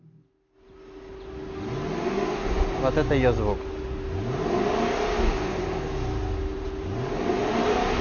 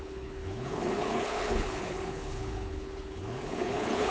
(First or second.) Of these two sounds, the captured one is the first